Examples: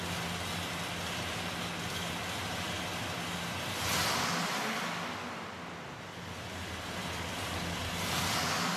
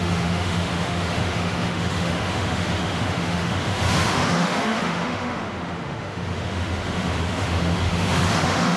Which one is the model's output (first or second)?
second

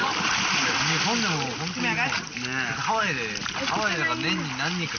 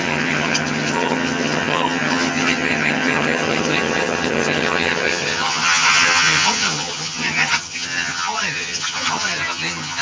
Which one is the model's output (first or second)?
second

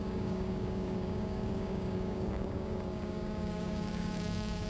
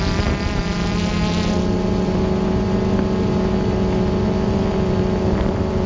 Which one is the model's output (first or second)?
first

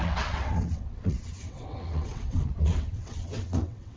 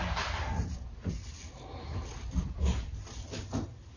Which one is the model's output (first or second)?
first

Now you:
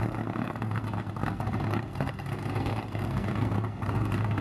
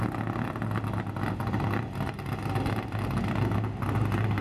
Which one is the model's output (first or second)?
first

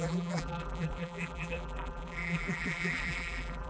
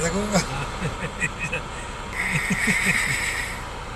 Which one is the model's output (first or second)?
first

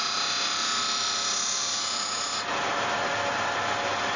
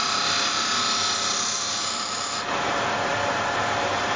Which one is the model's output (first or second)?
second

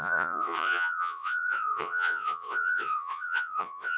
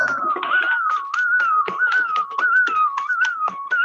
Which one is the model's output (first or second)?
first